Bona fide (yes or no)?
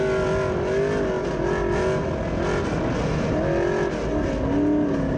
yes